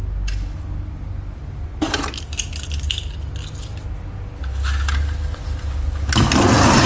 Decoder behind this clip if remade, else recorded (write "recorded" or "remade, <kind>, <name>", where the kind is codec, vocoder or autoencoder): recorded